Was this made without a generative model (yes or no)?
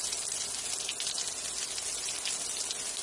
yes